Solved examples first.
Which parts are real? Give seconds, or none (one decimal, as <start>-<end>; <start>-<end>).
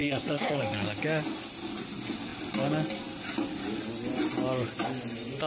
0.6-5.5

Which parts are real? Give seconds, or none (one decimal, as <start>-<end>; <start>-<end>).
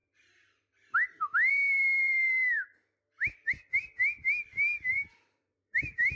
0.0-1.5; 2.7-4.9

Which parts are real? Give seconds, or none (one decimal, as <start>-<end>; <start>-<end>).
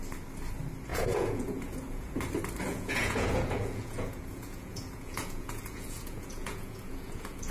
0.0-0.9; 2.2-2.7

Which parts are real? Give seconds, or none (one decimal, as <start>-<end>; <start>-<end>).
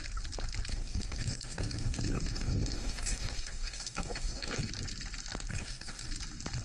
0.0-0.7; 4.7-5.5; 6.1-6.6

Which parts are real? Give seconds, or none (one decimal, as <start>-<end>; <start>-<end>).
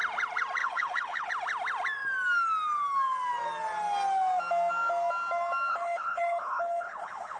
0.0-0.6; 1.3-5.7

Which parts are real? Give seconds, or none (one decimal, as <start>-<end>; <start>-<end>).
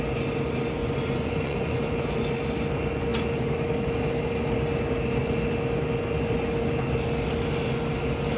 0.0-0.8; 1.8-8.4